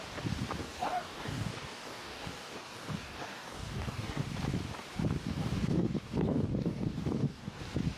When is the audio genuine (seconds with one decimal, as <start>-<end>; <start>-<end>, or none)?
0.0-0.6; 4.2-5.2; 7.6-8.0